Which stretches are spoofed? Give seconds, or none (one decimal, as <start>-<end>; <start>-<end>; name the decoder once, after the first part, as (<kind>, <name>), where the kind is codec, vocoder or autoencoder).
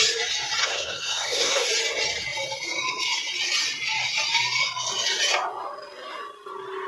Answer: 0.6-1.7 (codec, SNAC)